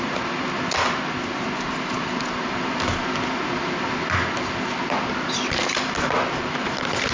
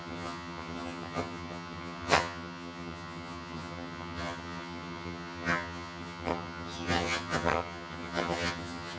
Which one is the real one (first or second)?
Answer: first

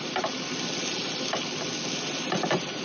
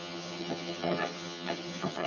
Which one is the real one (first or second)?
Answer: first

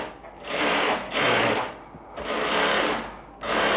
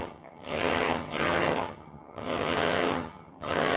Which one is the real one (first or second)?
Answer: first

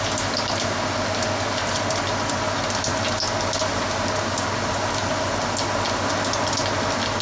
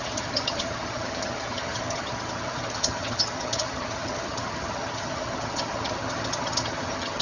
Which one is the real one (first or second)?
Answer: first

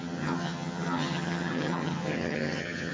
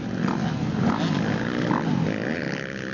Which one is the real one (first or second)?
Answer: second